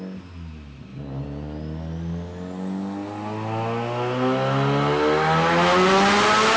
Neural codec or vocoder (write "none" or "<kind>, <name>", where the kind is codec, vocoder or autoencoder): none